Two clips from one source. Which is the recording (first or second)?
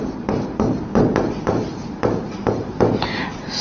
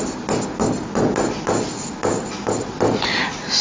second